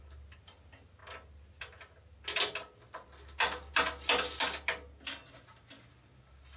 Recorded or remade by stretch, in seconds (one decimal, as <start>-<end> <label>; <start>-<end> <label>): 0.0-6.6 recorded